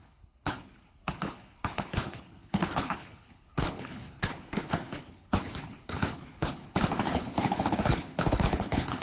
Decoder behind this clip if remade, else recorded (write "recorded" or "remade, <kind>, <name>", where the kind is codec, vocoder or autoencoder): remade, codec, HILCodec